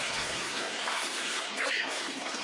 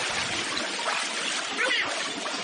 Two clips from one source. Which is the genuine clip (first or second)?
second